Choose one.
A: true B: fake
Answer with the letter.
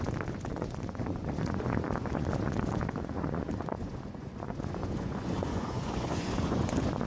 B